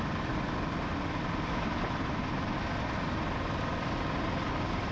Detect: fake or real real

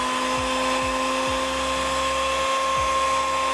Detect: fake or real real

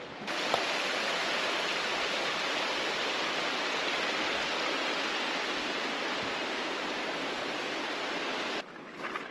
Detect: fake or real real